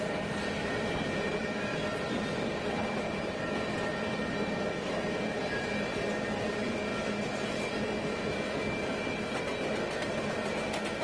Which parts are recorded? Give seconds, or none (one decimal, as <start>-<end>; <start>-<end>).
0.0-11.0